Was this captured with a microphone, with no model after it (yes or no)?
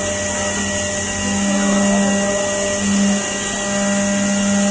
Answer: yes